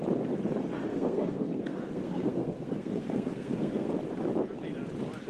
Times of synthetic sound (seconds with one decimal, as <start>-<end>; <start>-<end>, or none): 0.9-3.9